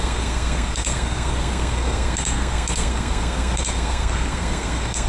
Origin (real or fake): fake